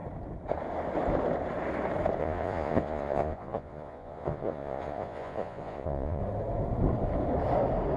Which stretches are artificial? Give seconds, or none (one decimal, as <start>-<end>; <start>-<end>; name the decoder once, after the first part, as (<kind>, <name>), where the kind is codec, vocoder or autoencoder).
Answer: 2.2-6.2 (vocoder, Vocos)